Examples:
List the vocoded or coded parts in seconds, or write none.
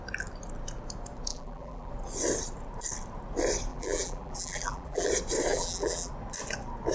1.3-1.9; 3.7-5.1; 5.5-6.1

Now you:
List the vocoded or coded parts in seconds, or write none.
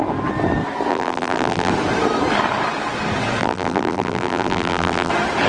0.9-1.7; 3.4-5.1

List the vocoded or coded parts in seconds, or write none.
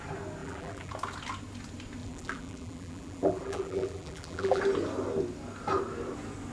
0.4-0.9; 2.0-4.6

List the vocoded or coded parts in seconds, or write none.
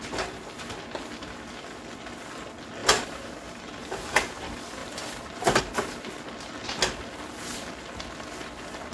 2.8-3.8; 4.8-5.6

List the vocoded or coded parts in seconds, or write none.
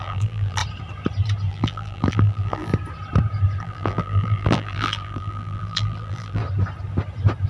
0.0-0.6; 1.5-2.7; 3.6-6.4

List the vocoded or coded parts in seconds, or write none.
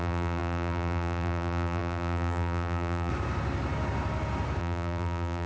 0.0-3.1; 4.6-5.5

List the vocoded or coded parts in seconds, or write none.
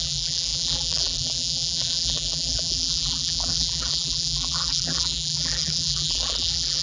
0.0-6.8